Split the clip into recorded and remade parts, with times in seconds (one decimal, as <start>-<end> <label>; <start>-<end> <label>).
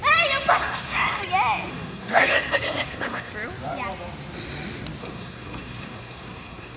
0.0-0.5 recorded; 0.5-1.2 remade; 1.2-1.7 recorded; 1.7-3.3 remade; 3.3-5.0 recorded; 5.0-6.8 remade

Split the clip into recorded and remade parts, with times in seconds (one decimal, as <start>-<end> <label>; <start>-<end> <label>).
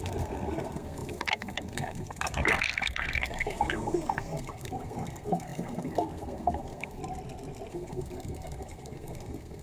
0.0-7.0 remade; 7.0-7.7 recorded; 7.7-9.6 remade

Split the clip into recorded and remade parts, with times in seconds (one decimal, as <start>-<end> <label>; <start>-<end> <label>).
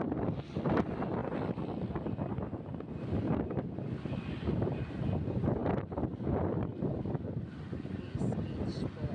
0.0-9.1 recorded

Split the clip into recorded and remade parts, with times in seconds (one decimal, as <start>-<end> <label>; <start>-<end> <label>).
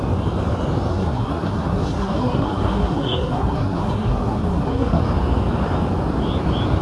0.0-0.9 recorded; 0.9-5.0 remade; 5.0-6.8 recorded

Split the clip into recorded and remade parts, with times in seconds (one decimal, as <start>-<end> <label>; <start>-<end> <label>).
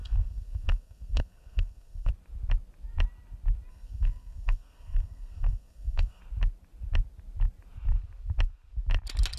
0.0-2.1 remade; 2.1-3.7 recorded; 3.7-6.2 remade; 6.2-9.4 recorded